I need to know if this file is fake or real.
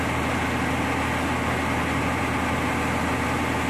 real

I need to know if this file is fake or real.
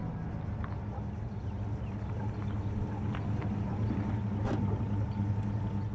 real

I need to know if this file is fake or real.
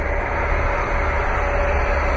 real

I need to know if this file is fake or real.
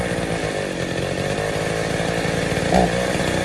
real